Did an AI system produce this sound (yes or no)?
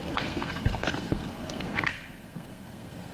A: yes